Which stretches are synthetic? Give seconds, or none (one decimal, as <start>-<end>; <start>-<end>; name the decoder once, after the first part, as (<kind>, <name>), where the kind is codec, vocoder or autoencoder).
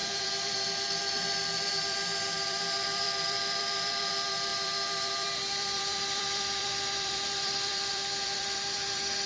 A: 0.0-9.3 (vocoder, BigVGAN v2)